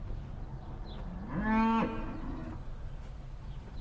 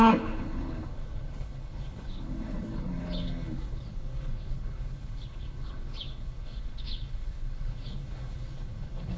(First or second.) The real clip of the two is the first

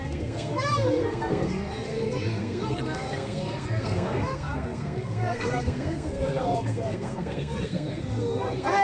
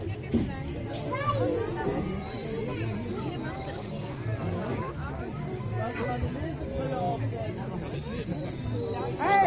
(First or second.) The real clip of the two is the second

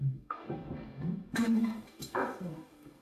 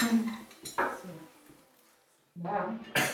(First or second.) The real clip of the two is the second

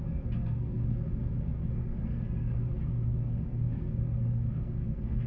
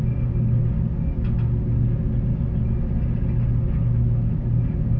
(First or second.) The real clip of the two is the second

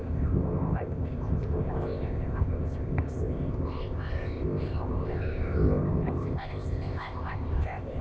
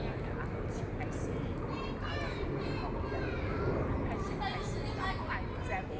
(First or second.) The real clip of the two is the second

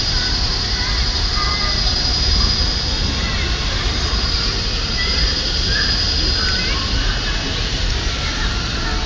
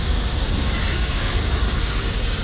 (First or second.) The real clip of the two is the first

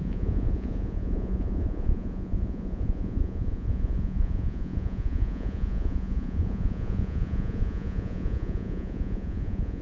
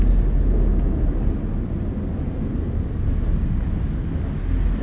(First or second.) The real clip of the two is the second